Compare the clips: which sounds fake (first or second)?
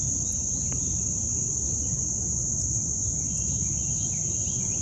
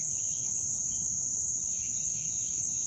second